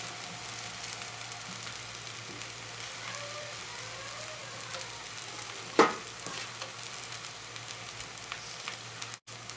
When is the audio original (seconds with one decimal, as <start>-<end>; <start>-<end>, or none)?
0.0-4.4; 5.3-9.6